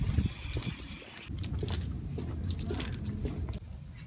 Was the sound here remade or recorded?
recorded